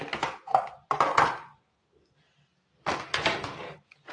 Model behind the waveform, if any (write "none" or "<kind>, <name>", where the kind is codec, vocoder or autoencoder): none